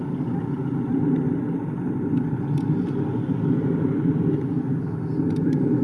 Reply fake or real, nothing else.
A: real